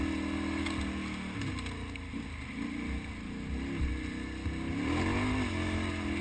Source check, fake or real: real